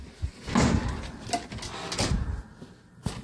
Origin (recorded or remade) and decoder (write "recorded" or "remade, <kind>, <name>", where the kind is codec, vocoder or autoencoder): recorded